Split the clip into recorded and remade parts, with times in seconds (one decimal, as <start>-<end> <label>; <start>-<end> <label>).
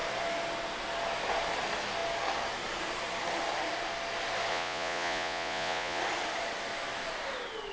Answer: 0.0-4.5 recorded; 4.5-6.0 remade; 6.0-7.7 recorded